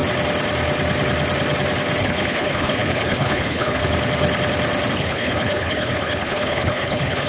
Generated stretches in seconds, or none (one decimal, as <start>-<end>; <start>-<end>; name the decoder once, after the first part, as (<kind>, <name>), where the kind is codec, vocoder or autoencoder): 2.0-3.8 (codec, HILCodec); 4.9-7.3